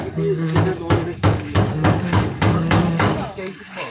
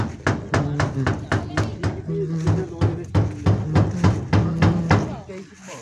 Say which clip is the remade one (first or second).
first